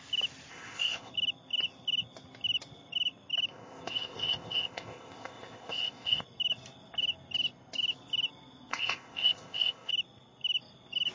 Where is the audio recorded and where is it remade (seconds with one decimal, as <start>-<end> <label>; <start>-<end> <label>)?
0.0-0.5 recorded; 0.5-1.1 remade; 1.1-3.5 recorded; 3.5-6.2 remade; 6.2-8.7 recorded; 8.7-9.9 remade; 9.9-11.1 recorded